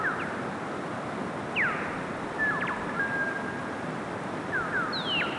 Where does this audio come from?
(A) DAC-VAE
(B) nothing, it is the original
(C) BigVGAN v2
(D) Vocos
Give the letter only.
B